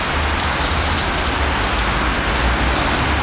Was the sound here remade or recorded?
recorded